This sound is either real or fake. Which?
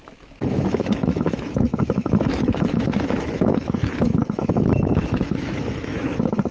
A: fake